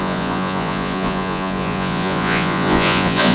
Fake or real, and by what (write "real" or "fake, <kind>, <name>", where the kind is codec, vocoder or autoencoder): fake, vocoder, Vocos